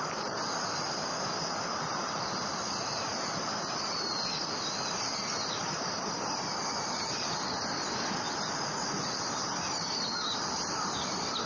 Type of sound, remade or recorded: recorded